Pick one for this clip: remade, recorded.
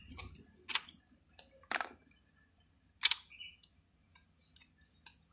recorded